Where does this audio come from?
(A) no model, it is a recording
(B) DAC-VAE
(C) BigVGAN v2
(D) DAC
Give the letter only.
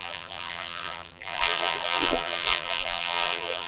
C